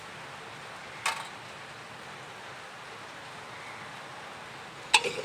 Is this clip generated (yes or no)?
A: no